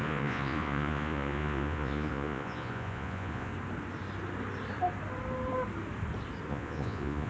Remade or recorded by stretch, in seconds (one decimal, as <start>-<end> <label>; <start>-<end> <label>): 0.0-3.5 remade; 3.5-6.5 recorded; 6.5-7.3 remade